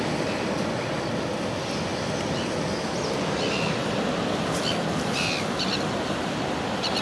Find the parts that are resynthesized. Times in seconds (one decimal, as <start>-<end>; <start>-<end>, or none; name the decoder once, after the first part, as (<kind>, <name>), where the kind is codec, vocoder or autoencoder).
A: none